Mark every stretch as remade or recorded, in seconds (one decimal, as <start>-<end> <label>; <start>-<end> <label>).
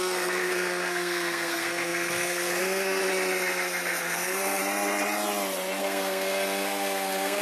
0.0-3.0 remade; 3.0-4.0 recorded; 4.0-4.6 remade; 4.6-5.8 recorded; 5.8-7.4 remade